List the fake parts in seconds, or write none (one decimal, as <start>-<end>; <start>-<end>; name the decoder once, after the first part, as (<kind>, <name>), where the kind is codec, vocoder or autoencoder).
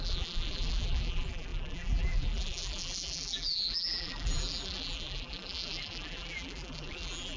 0.0-7.4 (vocoder, BigVGAN v2)